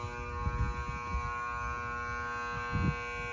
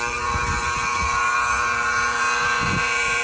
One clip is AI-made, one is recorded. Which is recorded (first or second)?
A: first